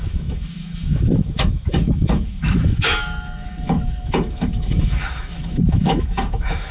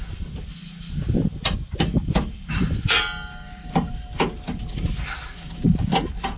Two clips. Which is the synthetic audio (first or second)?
first